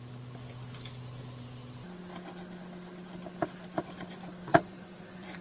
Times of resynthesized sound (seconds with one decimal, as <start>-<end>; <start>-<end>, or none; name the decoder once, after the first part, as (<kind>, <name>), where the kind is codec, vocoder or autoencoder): 4.5-5.4 (vocoder, Vocos)